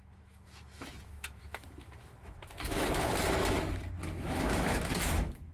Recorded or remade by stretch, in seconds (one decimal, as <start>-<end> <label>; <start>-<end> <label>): 0.0-5.5 remade